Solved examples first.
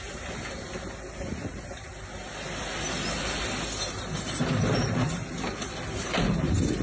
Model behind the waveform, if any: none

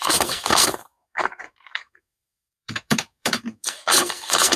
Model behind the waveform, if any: codec, SNAC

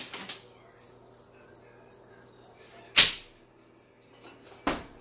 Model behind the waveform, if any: none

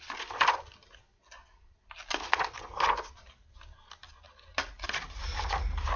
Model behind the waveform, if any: none